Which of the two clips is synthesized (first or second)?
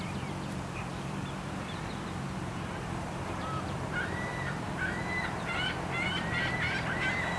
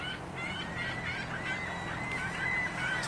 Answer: first